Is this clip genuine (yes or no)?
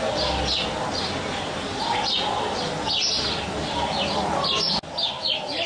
yes